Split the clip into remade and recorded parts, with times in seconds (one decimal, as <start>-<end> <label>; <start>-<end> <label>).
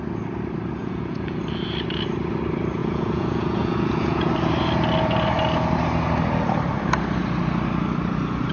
0.0-0.8 recorded; 0.8-1.4 remade; 1.4-2.8 recorded; 2.8-4.3 remade; 4.3-8.5 recorded